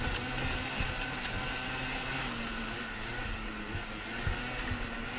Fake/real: real